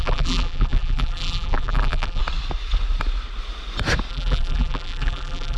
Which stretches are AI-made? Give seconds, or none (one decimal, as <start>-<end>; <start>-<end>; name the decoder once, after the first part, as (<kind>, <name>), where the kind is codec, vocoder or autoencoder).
0.0-2.2 (vocoder, BigVGAN v2); 4.1-5.6